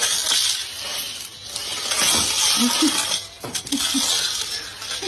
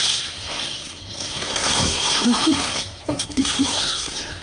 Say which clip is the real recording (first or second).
first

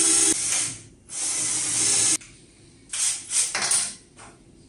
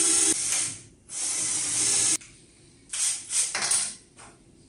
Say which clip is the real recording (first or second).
first